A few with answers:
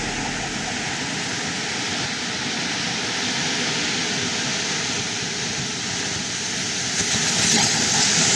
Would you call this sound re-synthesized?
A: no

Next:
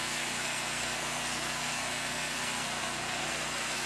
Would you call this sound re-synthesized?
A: yes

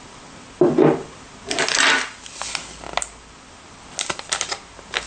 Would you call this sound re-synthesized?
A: no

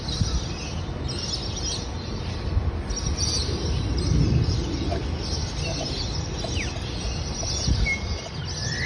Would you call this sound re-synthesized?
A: no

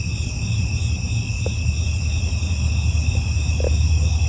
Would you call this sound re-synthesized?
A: no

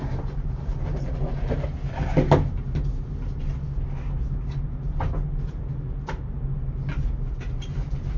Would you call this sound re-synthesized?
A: no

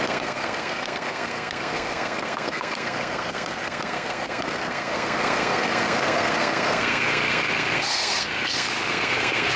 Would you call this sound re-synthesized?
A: yes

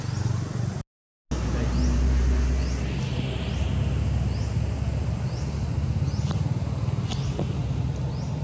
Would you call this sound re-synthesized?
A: no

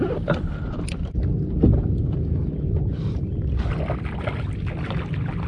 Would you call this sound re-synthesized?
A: no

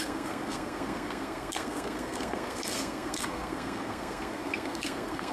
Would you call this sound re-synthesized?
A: yes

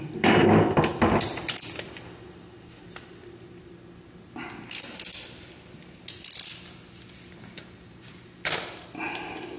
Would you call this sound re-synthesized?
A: no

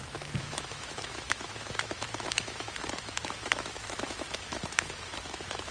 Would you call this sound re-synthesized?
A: yes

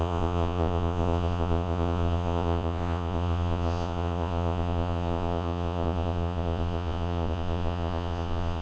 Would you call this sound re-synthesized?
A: yes